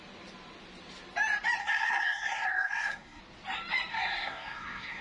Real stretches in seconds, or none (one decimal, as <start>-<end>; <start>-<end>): 0.0-1.6; 3.2-3.9